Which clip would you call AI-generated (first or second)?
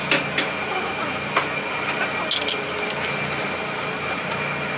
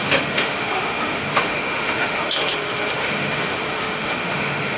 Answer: second